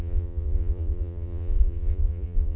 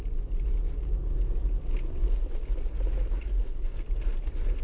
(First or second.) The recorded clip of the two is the second